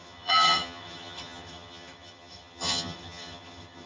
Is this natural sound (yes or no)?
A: no